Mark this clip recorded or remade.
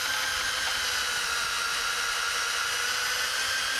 recorded